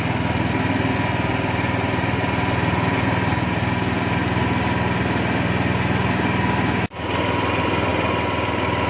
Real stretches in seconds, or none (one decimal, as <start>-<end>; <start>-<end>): 0.0-8.9